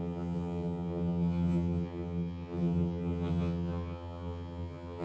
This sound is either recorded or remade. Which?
remade